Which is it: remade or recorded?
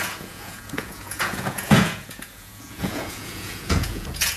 remade